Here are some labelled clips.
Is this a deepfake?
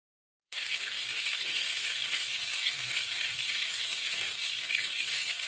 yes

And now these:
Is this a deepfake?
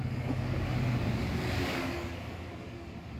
yes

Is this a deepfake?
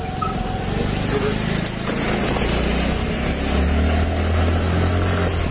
no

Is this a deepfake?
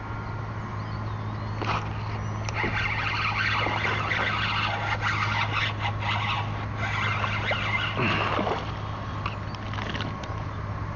no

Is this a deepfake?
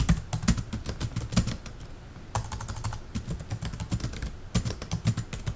no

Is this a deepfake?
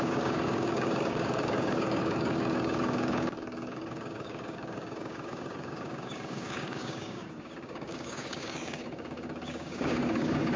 yes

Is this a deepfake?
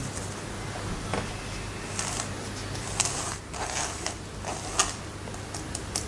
no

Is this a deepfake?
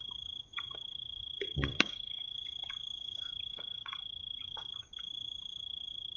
yes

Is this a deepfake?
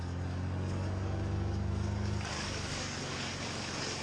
yes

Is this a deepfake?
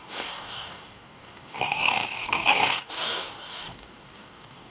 yes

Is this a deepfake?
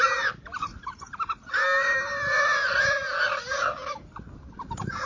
no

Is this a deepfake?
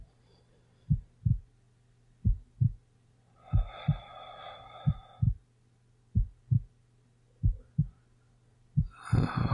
no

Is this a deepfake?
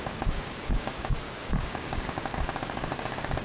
yes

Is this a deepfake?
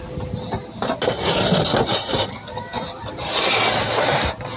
no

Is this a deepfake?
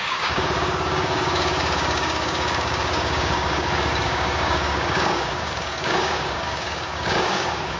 yes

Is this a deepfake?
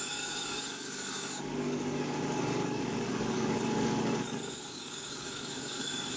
yes